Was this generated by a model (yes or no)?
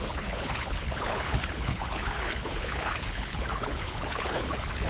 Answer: yes